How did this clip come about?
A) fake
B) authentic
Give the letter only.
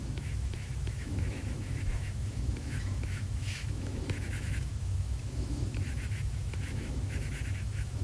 A